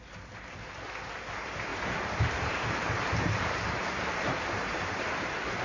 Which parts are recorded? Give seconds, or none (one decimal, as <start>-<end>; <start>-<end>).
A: 0.0-1.7; 5.1-5.6